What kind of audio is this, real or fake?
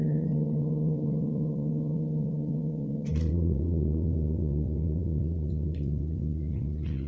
fake